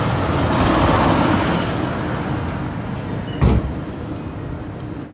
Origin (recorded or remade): recorded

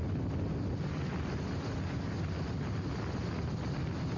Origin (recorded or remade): recorded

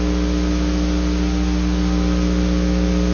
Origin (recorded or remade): recorded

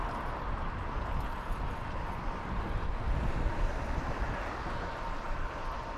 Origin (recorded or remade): recorded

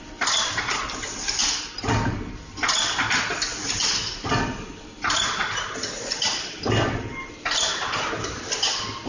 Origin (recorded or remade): recorded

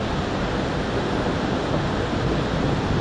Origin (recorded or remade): recorded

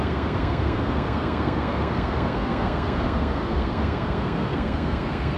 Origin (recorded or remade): remade